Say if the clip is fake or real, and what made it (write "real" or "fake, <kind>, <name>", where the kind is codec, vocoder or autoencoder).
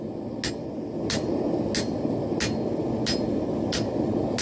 real